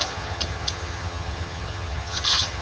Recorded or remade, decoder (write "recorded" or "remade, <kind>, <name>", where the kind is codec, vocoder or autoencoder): remade, vocoder, HiFi-GAN